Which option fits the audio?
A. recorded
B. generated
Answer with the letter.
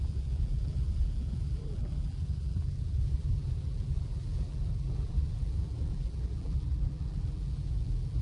B